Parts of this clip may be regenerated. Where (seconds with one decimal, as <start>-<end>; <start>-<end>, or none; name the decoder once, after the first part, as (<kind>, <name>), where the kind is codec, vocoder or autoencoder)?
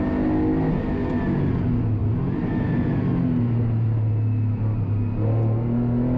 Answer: none